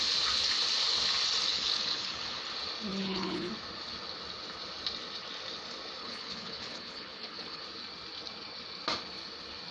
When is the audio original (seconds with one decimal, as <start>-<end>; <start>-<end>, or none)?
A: 0.0-1.5; 2.4-2.9; 3.5-6.0; 7.6-9.7